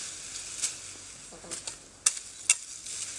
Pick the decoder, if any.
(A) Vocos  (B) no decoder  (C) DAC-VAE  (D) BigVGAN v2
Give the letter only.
B